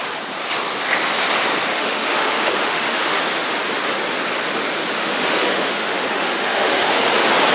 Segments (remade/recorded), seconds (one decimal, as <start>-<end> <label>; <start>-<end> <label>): 0.0-1.7 recorded; 1.7-3.2 remade; 3.2-5.0 recorded; 5.0-6.9 remade; 6.9-7.5 recorded